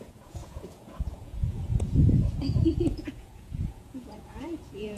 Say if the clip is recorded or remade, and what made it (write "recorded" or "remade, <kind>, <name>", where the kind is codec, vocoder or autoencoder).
remade, vocoder, Vocos